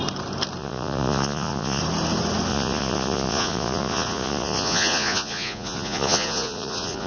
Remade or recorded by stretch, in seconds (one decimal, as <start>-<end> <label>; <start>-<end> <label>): 0.0-0.6 recorded; 0.6-1.8 remade; 1.8-2.5 recorded; 2.5-7.1 remade